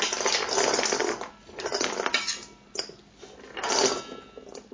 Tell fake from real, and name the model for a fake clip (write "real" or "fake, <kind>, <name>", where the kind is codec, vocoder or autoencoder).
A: real